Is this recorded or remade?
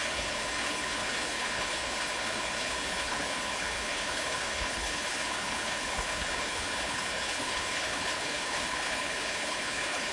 remade